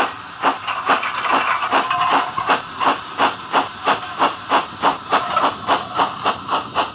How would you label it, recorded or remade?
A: recorded